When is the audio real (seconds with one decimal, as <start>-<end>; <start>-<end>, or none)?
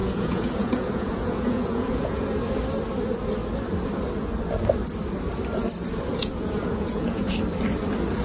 2.4-6.1; 7.3-8.2